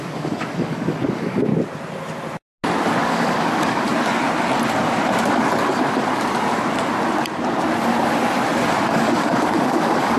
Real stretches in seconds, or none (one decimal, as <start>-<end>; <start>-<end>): 1.5-3.0; 3.9-8.9